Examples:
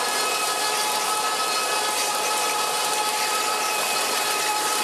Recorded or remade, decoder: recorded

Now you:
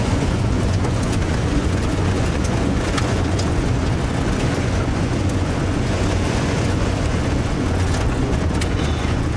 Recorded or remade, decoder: remade, vocoder, Vocos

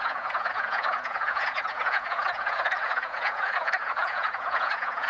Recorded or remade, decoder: remade, vocoder, Vocos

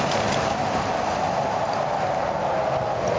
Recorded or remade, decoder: recorded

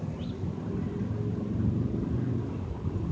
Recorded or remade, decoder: recorded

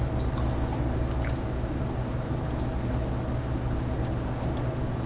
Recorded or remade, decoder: recorded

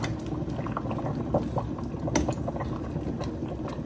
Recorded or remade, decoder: recorded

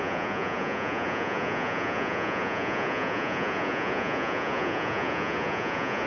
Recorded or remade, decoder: remade, vocoder, Vocos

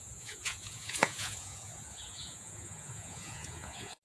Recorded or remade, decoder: remade, vocoder, Vocos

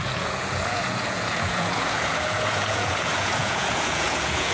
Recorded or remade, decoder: remade, vocoder, Vocos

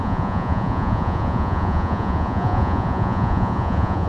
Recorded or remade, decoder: remade, vocoder, Vocos